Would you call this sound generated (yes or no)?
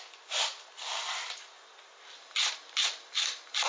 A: no